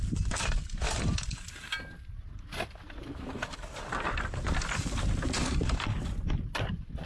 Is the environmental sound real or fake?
fake